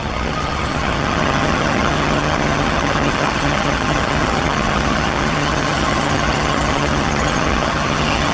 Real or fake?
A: fake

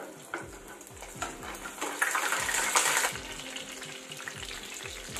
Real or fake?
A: real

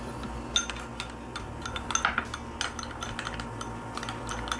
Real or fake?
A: real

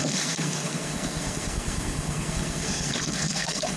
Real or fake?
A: fake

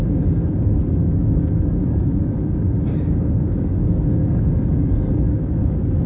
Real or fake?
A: fake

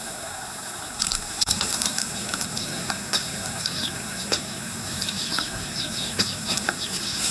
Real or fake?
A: fake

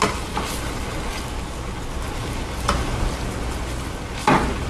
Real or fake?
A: real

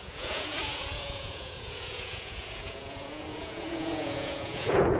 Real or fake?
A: fake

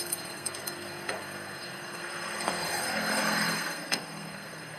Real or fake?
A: fake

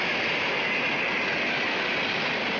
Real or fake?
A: real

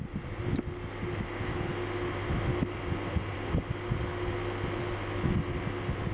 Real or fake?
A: real